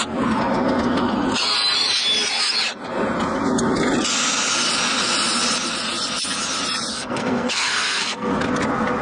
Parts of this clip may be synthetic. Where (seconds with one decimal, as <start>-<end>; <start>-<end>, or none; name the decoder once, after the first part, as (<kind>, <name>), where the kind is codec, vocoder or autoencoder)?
6.9-8.3 (codec, SNAC)